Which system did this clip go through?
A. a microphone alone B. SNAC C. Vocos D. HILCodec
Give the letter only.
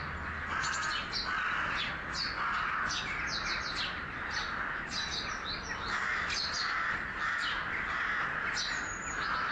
A